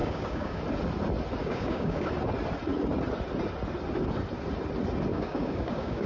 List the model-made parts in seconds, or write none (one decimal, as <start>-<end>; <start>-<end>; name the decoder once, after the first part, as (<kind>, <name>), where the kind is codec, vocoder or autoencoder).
0.0-0.6 (codec, DAC); 1.4-2.1; 5.1-6.1